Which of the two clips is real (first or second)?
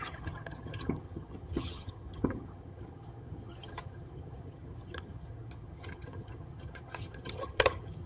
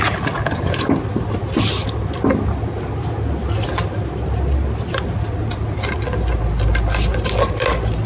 second